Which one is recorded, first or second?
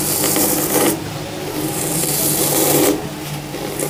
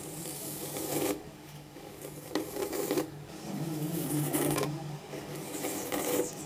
first